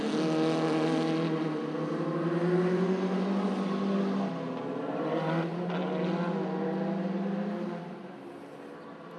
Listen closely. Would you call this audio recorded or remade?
recorded